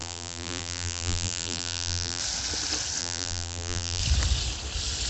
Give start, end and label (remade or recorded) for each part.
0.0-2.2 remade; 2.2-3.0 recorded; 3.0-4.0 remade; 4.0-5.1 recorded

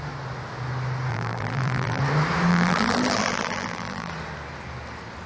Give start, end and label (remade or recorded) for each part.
0.0-1.1 recorded; 1.1-2.0 remade; 2.0-2.5 recorded; 2.5-4.1 remade; 4.1-5.3 recorded

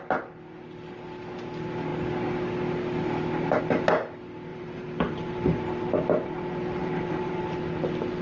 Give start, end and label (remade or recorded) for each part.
0.0-4.5 recorded; 4.5-5.6 remade; 5.6-6.8 recorded; 6.8-7.4 remade; 7.4-8.2 recorded

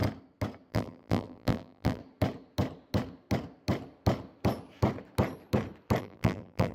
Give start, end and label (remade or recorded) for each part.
0.0-0.7 recorded; 0.7-2.0 remade; 2.0-6.0 recorded; 6.0-6.7 remade

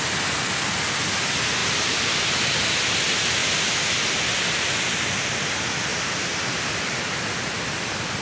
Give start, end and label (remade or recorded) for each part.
0.0-1.6 recorded; 1.6-2.4 remade; 2.4-5.9 recorded; 5.9-6.6 remade; 6.6-8.2 recorded

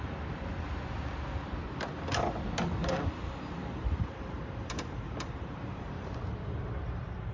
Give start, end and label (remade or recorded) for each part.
0.0-2.8 recorded; 2.8-7.3 remade

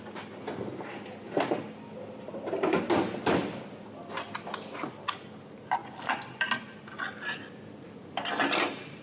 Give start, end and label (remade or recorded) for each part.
0.0-9.0 recorded